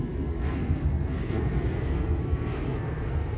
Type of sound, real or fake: fake